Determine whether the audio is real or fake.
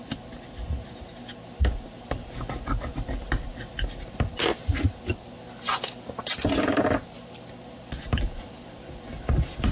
real